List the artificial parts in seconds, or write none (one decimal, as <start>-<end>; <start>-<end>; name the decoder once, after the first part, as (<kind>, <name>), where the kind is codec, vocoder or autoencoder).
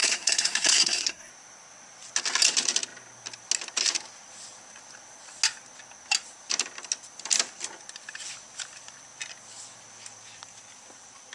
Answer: 0.0-1.3 (codec, SNAC)